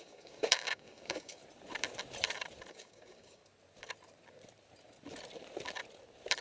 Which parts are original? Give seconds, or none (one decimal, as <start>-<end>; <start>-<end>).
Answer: 1.4-2.7; 3.4-6.4